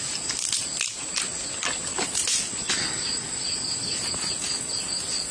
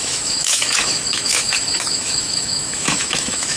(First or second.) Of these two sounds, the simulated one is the second